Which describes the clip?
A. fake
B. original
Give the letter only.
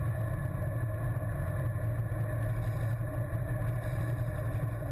B